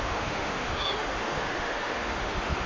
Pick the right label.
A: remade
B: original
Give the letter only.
A